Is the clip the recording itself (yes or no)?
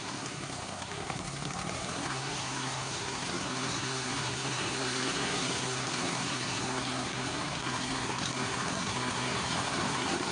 no